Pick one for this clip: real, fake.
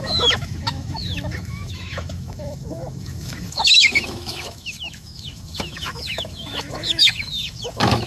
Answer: fake